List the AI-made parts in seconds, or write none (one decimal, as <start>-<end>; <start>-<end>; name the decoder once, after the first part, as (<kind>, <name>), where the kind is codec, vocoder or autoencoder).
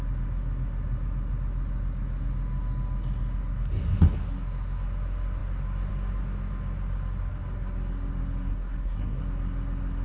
8.5-9.2 (codec, SNAC)